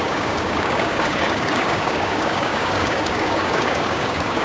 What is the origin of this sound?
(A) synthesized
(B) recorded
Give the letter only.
A